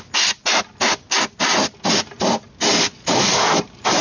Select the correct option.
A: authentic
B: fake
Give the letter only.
A